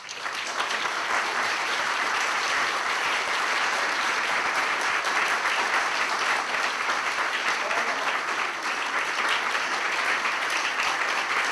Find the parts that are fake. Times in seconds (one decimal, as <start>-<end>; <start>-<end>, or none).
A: 1.3-5.0